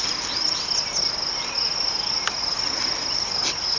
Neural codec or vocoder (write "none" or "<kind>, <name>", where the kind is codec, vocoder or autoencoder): none